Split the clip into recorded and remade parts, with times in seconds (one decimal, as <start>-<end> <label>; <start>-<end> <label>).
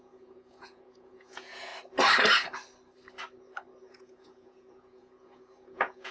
0.0-1.7 remade; 1.7-3.8 recorded; 3.8-6.1 remade